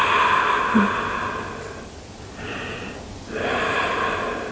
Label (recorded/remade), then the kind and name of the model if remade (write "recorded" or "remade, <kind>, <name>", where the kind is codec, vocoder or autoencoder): recorded